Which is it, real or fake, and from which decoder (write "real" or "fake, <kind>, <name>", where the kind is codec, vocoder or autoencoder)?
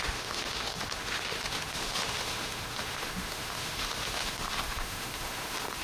fake, autoencoder, DAC-VAE